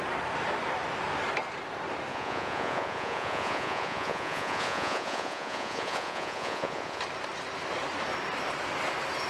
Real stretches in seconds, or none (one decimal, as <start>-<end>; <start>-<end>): 0.0-2.1; 7.0-9.3